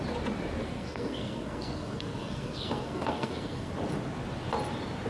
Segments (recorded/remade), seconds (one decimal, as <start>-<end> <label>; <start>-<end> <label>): 0.0-0.6 recorded; 0.6-3.7 remade; 3.7-5.1 recorded